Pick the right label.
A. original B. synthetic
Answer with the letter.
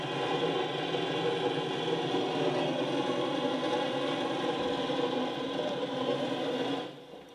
A